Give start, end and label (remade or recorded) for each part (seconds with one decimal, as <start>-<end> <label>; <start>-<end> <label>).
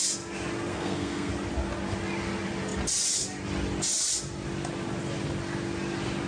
0.0-0.7 recorded; 0.7-1.3 remade; 1.3-6.3 recorded